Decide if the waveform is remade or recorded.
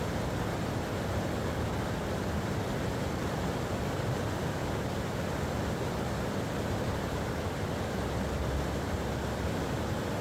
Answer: recorded